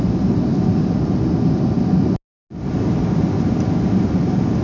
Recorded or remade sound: recorded